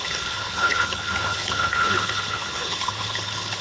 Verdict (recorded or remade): remade